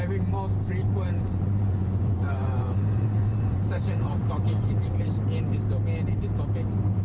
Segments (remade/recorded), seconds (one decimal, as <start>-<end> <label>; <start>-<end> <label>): 0.0-0.8 recorded; 0.8-5.0 remade; 5.0-7.0 recorded

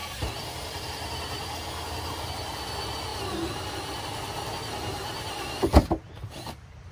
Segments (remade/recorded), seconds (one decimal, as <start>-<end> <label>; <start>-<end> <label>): 0.0-6.9 recorded

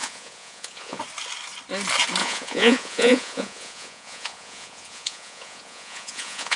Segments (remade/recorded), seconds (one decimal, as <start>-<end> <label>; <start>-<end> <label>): 0.0-1.0 remade; 1.0-2.2 recorded; 2.2-6.6 remade

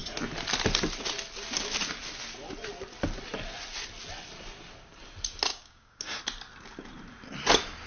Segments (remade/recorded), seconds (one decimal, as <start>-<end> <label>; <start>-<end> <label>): 0.0-5.5 recorded; 5.5-6.0 remade; 6.0-7.9 recorded